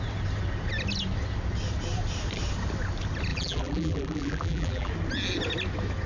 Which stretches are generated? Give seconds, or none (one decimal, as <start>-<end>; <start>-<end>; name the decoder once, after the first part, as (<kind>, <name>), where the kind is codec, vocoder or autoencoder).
3.3-4.9 (vocoder, BigVGAN v2)